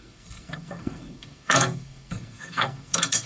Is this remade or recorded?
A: remade